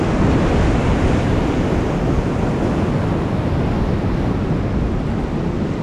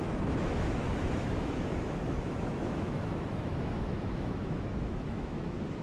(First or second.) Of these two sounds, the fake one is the second